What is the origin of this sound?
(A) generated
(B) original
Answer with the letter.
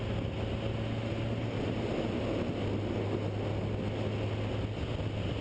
B